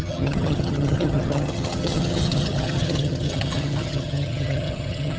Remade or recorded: remade